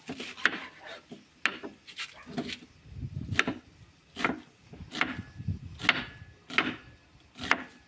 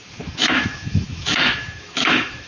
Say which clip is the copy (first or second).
second